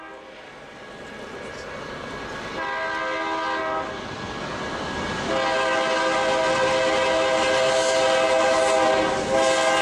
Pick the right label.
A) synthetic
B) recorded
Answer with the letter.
B